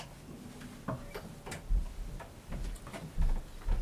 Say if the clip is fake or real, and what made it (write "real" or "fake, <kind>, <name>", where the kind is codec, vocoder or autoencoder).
real